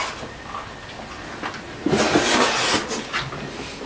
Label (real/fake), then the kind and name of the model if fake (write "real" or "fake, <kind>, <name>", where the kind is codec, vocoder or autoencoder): real